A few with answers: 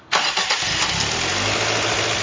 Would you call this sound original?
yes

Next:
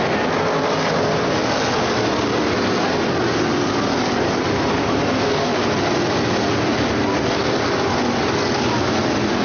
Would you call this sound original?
yes